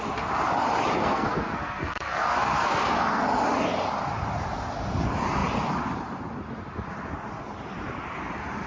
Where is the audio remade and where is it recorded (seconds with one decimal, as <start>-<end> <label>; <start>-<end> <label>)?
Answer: 0.0-1.0 recorded; 1.0-3.2 remade; 3.2-8.7 recorded